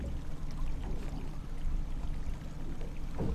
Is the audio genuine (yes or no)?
yes